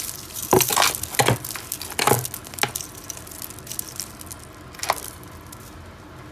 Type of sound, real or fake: real